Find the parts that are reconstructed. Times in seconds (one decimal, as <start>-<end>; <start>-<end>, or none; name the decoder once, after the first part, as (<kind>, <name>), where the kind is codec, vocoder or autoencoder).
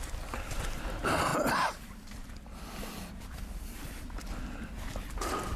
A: 0.0-5.6 (vocoder, BigVGAN v2)